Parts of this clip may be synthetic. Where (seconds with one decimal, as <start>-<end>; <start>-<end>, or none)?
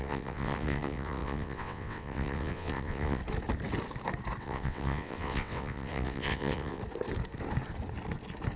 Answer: 0.0-3.2; 4.4-6.8